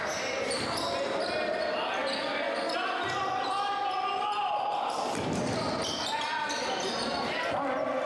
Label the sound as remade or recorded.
recorded